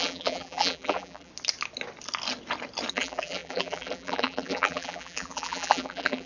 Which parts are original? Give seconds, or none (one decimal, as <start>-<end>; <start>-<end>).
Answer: 1.3-2.9